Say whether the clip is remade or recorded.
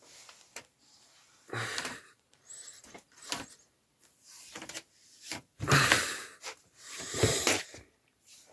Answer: remade